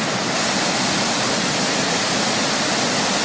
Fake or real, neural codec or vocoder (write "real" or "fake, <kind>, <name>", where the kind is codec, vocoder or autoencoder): real